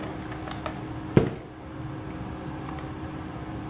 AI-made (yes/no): no